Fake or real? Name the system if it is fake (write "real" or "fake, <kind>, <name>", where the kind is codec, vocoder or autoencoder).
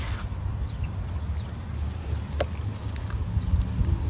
real